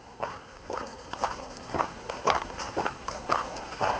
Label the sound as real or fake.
fake